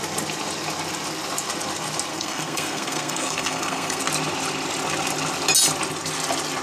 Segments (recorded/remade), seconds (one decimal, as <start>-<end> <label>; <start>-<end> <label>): 0.0-2.1 recorded; 2.1-4.0 remade; 4.0-6.6 recorded